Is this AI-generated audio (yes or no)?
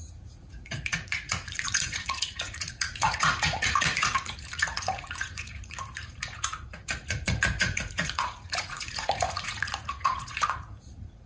yes